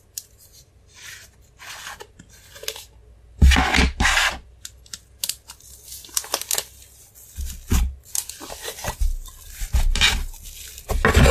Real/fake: real